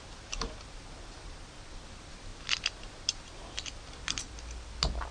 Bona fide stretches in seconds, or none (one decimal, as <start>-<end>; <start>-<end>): 0.0-5.1